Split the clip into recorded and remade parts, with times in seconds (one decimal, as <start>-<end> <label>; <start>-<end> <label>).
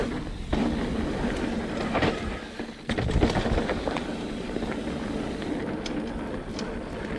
0.0-7.2 recorded